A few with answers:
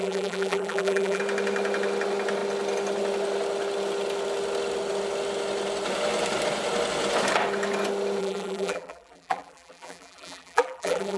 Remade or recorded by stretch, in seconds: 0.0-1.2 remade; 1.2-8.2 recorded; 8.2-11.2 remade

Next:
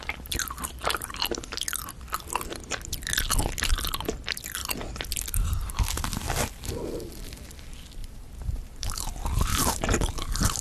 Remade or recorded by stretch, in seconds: 0.0-8.0 recorded; 8.0-9.0 remade; 9.0-9.5 recorded; 9.5-10.1 remade; 10.1-10.6 recorded

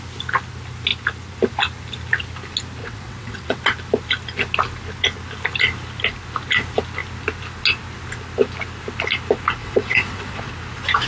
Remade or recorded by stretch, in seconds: 0.0-2.8 recorded; 2.8-3.6 remade; 3.6-9.6 recorded; 9.6-10.5 remade; 10.5-11.1 recorded

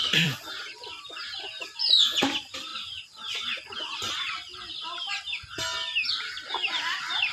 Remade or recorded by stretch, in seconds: 0.0-2.7 remade; 2.7-6.1 recorded; 6.1-7.3 remade

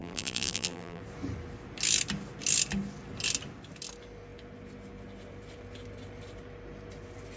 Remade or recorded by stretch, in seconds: 0.0-1.0 remade; 1.0-7.4 recorded

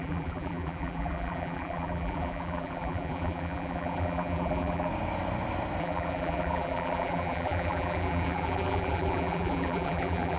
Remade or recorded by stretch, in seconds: 0.0-4.9 remade; 4.9-5.8 recorded; 5.8-10.4 remade

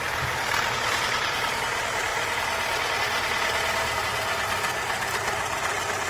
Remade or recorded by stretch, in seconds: 0.0-2.1 remade; 2.1-4.0 recorded; 4.0-6.1 remade

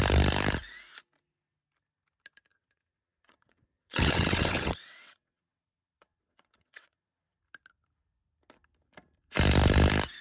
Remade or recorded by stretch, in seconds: 0.0-2.5 recorded; 2.5-7.4 remade; 7.4-10.2 recorded